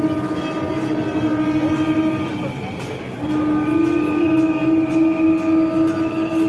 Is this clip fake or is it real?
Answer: real